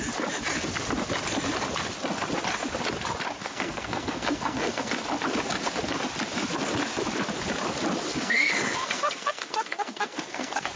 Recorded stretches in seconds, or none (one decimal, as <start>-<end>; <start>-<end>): 0.0-3.4; 4.9-8.1